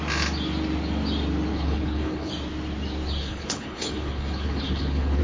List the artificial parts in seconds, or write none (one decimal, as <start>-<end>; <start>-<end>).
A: 1.5-2.3; 3.2-5.2